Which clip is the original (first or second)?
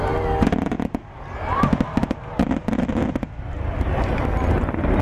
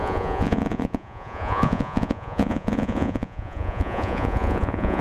first